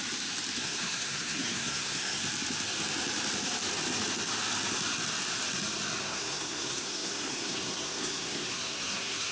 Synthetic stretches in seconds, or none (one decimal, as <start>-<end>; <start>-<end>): 0.6-2.2; 6.0-9.3